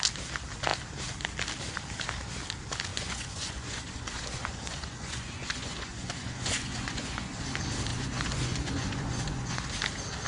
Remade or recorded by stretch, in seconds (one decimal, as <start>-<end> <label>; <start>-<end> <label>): 0.0-2.9 recorded; 2.9-7.4 remade; 7.4-7.9 recorded; 7.9-9.7 remade; 9.7-10.3 recorded